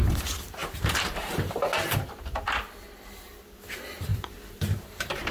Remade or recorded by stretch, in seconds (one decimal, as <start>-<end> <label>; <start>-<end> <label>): 0.0-0.6 recorded; 0.6-2.3 remade; 2.3-4.1 recorded; 4.1-5.3 remade

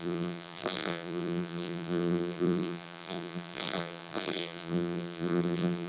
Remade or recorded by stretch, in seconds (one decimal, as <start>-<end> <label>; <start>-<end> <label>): 0.0-5.9 remade

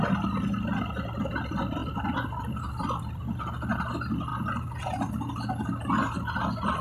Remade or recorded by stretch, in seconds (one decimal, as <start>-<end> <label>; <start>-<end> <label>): 0.0-1.8 recorded; 1.8-3.7 remade; 3.7-4.3 recorded; 4.3-5.1 remade; 5.1-6.8 recorded

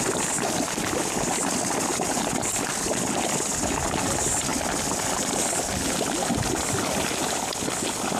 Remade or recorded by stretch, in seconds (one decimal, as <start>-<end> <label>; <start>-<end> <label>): 0.0-1.9 recorded; 1.9-3.2 remade; 3.2-8.2 recorded